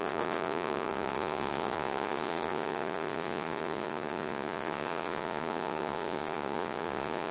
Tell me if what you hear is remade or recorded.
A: remade